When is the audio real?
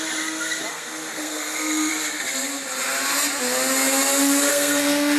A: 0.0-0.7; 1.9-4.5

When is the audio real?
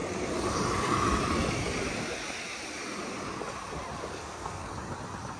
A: 0.0-4.1; 4.7-5.4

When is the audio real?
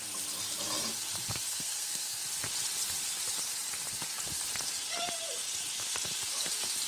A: 0.0-1.5; 2.2-6.9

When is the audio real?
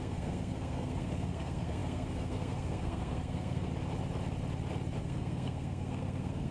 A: 3.7-5.0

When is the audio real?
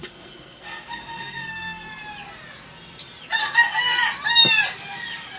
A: 1.9-3.4; 4.0-5.4